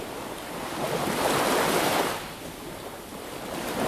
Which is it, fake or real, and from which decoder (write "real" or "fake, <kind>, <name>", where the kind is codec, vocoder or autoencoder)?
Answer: real